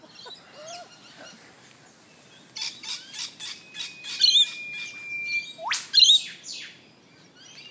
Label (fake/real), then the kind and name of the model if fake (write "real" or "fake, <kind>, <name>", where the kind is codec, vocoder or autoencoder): real